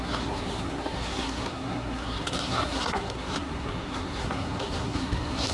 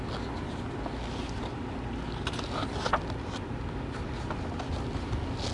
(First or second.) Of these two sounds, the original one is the second